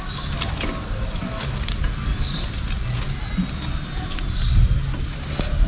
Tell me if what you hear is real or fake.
real